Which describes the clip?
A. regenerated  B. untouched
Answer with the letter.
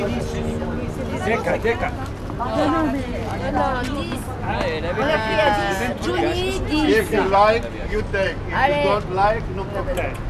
B